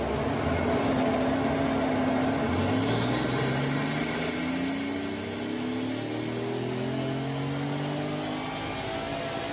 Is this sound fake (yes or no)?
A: no